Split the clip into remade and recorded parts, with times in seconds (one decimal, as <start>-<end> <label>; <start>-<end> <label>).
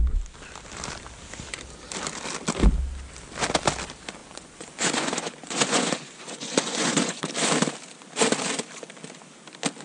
0.0-4.2 recorded; 4.2-7.2 remade; 7.2-9.8 recorded